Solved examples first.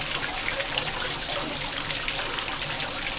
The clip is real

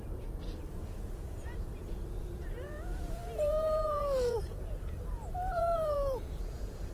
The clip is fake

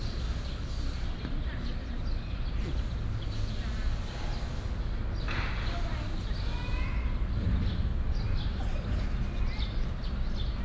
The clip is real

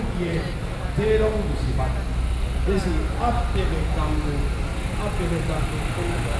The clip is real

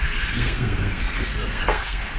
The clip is fake